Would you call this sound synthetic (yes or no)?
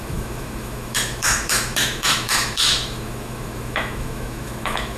yes